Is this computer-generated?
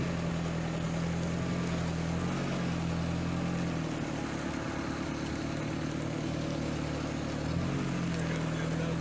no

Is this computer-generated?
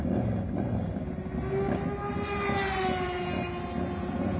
no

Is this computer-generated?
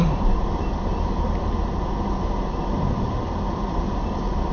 no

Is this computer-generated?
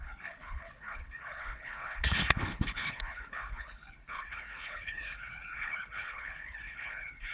yes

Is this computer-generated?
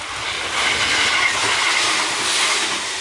no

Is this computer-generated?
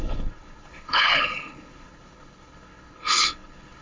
yes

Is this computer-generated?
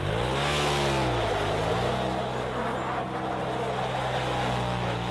no